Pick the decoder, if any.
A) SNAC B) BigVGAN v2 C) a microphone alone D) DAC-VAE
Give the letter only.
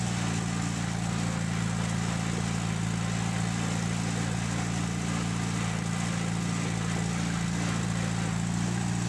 C